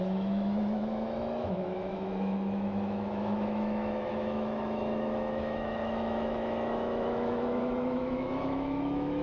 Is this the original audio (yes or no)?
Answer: no